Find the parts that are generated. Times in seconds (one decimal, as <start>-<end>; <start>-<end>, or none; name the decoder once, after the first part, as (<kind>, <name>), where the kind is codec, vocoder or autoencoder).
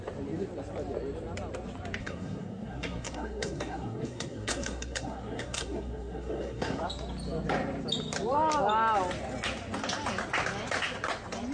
2.0-6.8 (codec, SNAC)